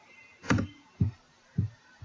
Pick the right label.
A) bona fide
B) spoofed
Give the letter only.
B